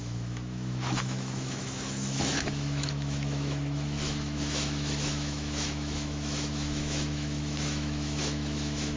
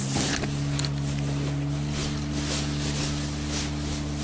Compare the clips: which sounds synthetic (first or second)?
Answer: first